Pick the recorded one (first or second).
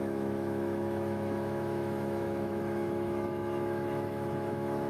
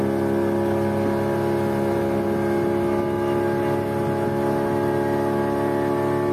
second